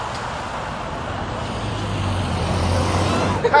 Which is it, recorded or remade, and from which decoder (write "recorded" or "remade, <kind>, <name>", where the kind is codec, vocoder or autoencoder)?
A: recorded